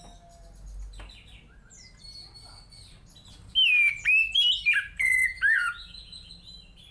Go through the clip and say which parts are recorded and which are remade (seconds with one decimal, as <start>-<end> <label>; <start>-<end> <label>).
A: 0.0-5.2 recorded; 5.2-6.3 remade; 6.3-6.9 recorded